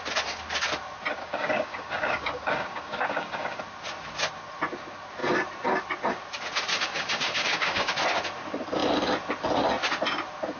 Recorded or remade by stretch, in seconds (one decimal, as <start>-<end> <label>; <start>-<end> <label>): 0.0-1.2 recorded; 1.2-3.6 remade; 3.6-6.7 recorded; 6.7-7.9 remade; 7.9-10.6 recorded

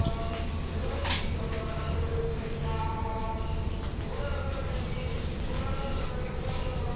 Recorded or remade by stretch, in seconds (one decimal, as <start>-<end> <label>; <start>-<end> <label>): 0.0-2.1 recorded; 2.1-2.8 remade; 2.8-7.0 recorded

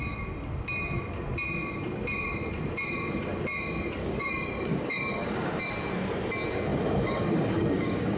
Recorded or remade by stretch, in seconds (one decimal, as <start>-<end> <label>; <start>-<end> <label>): 0.0-4.0 recorded; 4.0-5.6 remade; 5.6-6.7 recorded; 6.7-8.2 remade